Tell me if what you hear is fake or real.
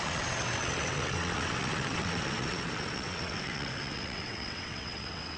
fake